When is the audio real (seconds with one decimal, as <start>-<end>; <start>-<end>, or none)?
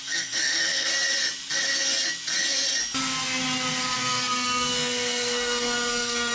0.9-4.0